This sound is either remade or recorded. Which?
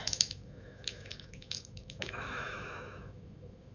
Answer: remade